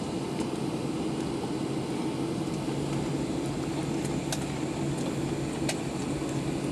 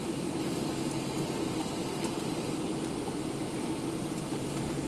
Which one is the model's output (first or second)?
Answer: second